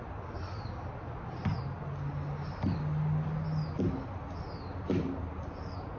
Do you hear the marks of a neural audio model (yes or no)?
no